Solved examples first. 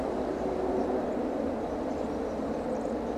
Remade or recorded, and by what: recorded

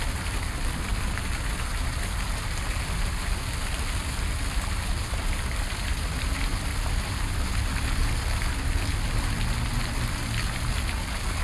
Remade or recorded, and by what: recorded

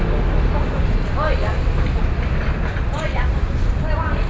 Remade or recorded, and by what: recorded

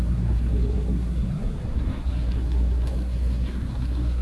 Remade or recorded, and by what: remade, codec, SNAC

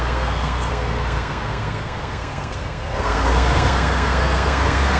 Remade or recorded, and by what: remade, codec, SNAC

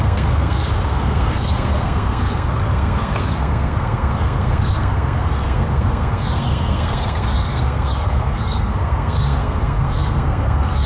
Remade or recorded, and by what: remade, codec, SNAC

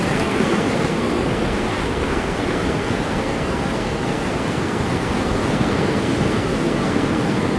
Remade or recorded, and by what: remade, codec, SNAC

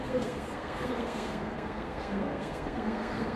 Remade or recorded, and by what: remade, codec, SNAC